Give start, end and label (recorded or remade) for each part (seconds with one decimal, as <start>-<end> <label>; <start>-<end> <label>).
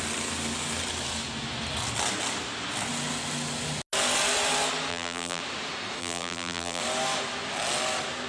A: 0.0-4.9 recorded; 4.9-5.4 remade; 5.4-6.0 recorded; 6.0-6.8 remade; 6.8-8.3 recorded